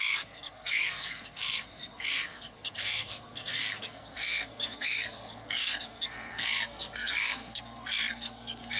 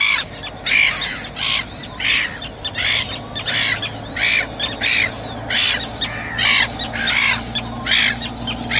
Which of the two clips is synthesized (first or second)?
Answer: first